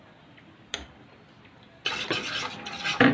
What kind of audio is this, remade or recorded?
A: recorded